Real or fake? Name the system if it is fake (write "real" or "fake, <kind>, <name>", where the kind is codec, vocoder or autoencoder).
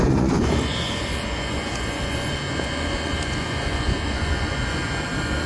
fake, vocoder, Vocos